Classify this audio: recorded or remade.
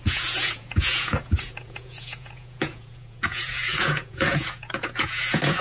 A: remade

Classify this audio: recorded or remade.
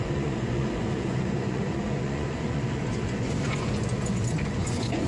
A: remade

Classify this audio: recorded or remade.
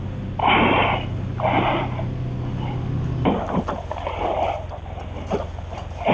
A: recorded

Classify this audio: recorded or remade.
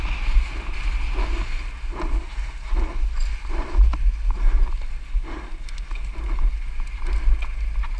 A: recorded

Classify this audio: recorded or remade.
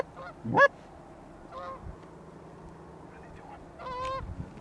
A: recorded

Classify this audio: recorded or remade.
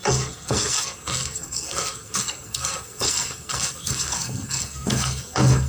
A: remade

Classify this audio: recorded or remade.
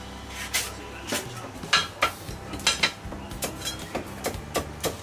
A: recorded